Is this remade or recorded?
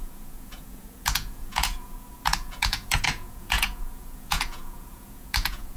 remade